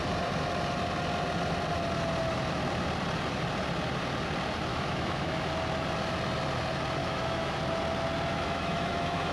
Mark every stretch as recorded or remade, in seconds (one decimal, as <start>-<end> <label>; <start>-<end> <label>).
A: 0.0-4.7 recorded; 4.7-5.5 remade; 5.5-7.0 recorded; 7.0-7.6 remade; 7.6-8.3 recorded; 8.3-9.3 remade